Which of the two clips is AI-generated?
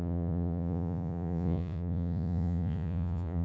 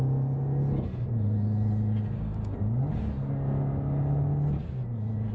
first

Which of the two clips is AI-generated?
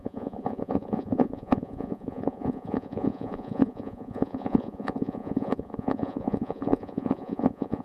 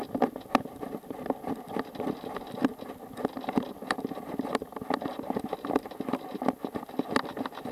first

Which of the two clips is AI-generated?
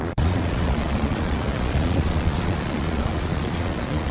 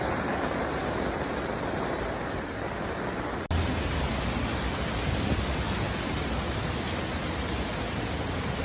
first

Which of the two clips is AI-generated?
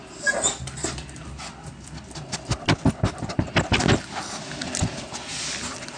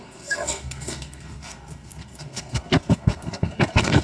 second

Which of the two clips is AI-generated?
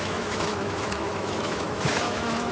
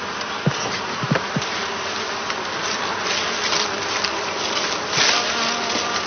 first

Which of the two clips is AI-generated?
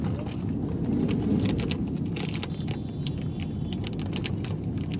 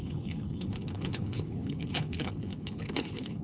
second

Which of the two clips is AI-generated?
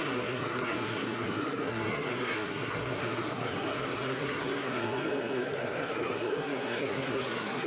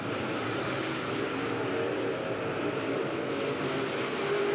first